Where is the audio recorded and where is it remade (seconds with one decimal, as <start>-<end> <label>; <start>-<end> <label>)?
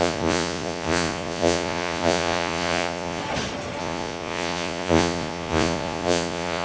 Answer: 0.0-3.2 remade; 3.2-3.8 recorded; 3.8-6.6 remade